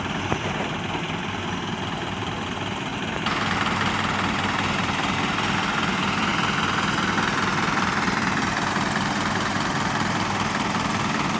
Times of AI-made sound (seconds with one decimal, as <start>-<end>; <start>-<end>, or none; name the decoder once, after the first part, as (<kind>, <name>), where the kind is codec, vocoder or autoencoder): 2.9-3.9 (vocoder, BigVGAN v2)